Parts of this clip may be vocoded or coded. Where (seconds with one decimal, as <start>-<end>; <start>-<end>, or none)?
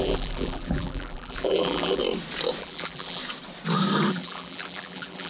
0.0-2.0; 2.6-3.2; 4.1-5.3